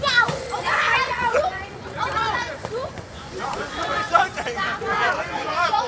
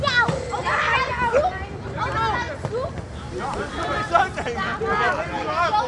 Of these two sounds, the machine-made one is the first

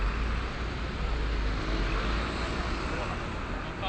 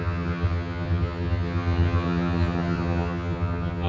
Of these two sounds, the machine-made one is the second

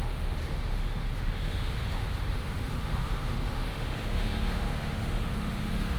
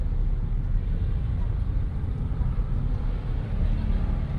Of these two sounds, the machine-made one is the first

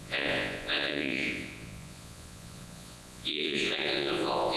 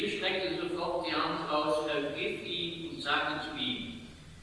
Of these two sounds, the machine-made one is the first